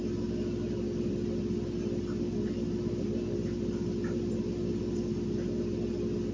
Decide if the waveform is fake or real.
real